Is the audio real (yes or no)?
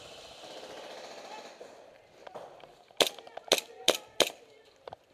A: yes